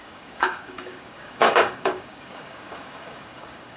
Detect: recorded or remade remade